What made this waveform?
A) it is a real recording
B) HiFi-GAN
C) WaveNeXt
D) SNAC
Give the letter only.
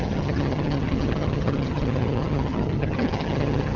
B